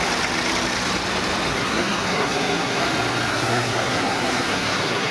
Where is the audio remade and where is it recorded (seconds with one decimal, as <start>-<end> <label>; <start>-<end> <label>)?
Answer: 0.0-1.5 recorded; 1.5-2.8 remade; 2.8-3.3 recorded; 3.3-5.1 remade